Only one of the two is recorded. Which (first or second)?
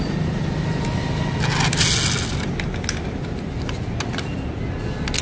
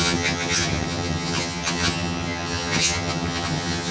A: first